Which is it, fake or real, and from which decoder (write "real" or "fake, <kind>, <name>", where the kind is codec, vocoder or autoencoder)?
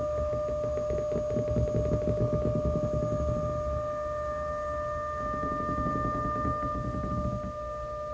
real